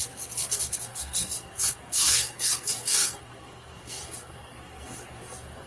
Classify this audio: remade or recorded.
remade